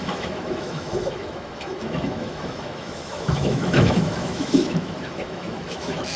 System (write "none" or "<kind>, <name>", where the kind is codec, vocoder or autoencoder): autoencoder, DAC-VAE